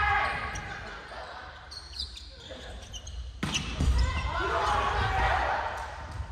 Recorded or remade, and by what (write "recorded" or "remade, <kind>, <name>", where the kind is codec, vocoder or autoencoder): recorded